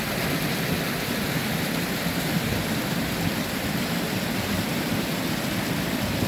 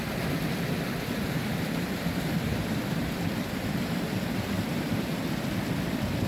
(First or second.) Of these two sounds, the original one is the first